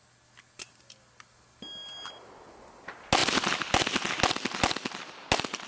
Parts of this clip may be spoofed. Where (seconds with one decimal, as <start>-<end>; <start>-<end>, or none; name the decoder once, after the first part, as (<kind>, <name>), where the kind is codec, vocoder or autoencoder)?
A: none